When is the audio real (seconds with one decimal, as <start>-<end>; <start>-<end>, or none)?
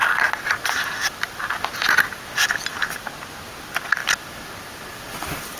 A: 0.0-5.6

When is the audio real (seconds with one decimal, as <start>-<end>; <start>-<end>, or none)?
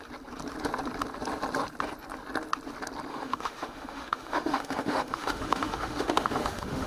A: 0.0-3.1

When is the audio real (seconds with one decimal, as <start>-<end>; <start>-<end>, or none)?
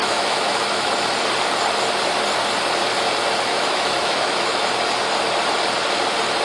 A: 0.9-3.5; 4.7-6.4